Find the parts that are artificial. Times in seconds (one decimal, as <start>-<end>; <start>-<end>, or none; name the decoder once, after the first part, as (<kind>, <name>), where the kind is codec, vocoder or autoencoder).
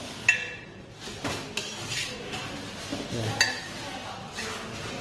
none